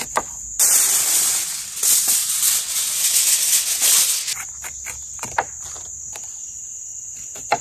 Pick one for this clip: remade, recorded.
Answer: recorded